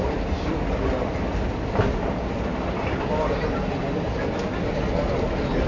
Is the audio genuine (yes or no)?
yes